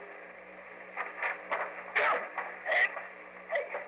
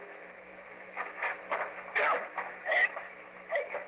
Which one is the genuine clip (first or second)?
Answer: first